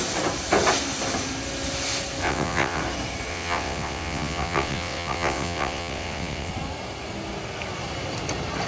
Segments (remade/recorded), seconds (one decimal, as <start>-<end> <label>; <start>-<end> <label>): 0.0-2.2 recorded; 2.2-2.8 remade; 2.8-3.3 recorded; 3.3-6.5 remade; 6.5-8.7 recorded